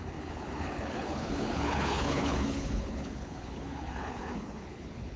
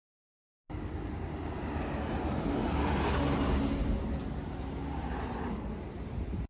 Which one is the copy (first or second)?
first